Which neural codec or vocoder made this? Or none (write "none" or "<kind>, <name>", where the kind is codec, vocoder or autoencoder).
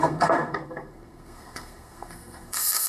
codec, SNAC